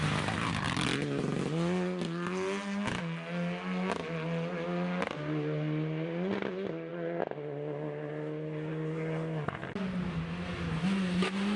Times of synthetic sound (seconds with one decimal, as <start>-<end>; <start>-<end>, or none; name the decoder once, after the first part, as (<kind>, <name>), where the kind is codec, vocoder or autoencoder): none